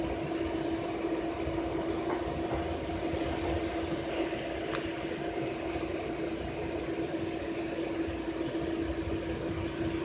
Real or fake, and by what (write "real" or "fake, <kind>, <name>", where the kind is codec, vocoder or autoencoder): real